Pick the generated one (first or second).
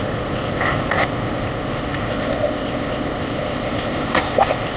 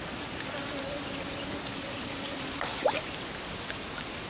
first